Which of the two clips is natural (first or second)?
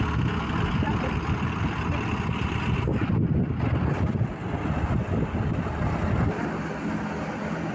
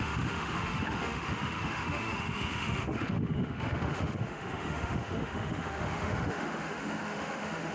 first